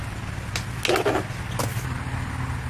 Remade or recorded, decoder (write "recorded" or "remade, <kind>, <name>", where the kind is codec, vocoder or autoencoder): recorded